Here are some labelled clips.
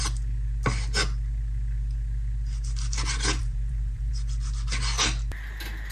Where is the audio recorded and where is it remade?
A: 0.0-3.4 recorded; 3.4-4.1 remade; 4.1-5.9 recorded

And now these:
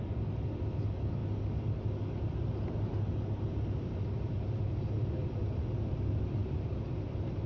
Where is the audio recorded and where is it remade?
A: 0.0-7.5 remade

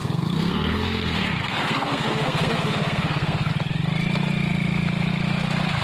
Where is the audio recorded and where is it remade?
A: 0.0-3.5 remade; 3.5-5.8 recorded

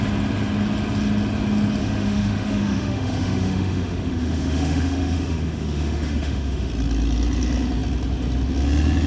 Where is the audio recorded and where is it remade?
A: 0.0-1.8 recorded; 1.8-6.7 remade; 6.7-9.1 recorded

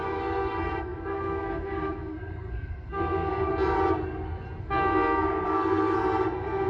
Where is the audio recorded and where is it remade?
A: 0.0-3.5 remade; 3.5-4.6 recorded; 4.6-6.7 remade

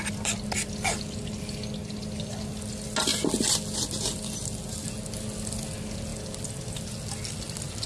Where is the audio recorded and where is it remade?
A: 0.0-7.9 recorded

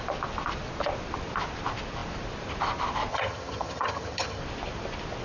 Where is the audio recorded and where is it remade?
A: 0.0-3.1 recorded; 3.1-4.4 remade; 4.4-5.2 recorded

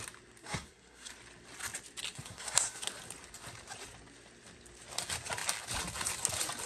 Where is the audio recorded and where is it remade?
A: 0.0-0.4 recorded; 0.4-1.1 remade; 1.1-2.1 recorded; 2.1-2.9 remade; 2.9-6.7 recorded